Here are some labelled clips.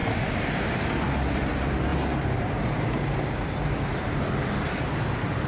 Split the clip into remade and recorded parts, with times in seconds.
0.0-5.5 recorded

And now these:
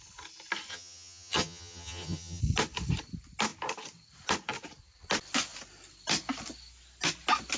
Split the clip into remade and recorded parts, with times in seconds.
0.0-0.7 recorded; 0.7-2.4 remade; 2.4-7.6 recorded

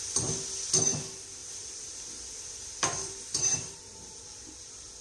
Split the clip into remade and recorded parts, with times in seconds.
0.0-1.4 recorded; 1.4-4.4 remade; 4.4-5.0 recorded

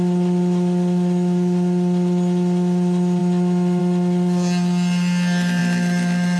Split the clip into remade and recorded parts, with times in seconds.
0.0-6.4 recorded

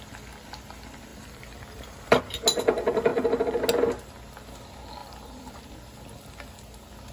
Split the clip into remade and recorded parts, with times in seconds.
0.0-1.1 recorded; 1.1-2.2 remade; 2.2-5.0 recorded; 5.0-5.6 remade; 5.6-7.1 recorded

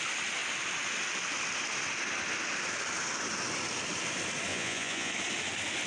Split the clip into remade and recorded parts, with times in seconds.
0.0-4.5 recorded; 4.5-5.1 remade; 5.1-5.9 recorded

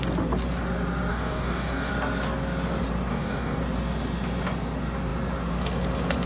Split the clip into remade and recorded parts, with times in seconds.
0.0-1.1 recorded; 1.1-1.9 remade; 1.9-3.1 recorded; 3.1-3.6 remade; 3.6-6.3 recorded